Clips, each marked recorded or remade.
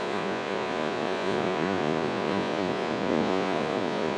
remade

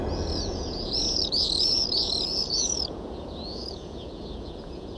remade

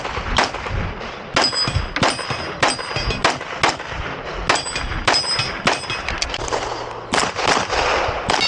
recorded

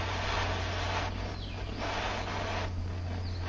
recorded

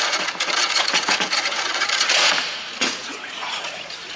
remade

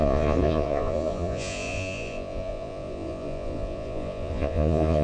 remade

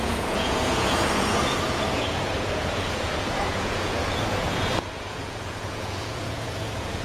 remade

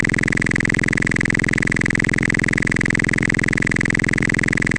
recorded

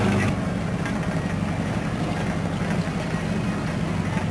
recorded